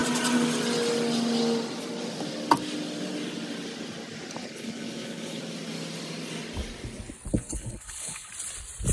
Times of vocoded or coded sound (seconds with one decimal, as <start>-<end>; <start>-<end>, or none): 4.4-5.4; 7.3-8.3